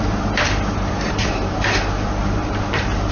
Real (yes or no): no